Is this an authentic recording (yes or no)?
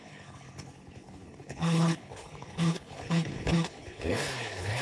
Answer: no